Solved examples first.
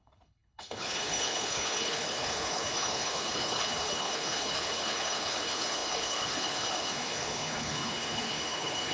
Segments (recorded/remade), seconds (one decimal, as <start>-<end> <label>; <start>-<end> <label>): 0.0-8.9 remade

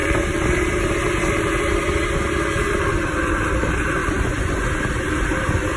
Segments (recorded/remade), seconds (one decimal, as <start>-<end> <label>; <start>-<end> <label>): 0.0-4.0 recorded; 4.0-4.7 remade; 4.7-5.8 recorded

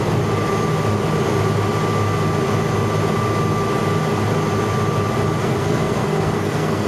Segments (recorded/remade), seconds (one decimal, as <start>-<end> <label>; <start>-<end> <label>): 0.0-5.4 recorded; 5.4-6.9 remade